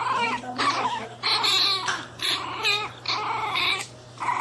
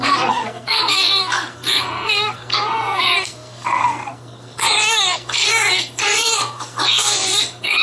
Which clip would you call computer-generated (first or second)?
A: second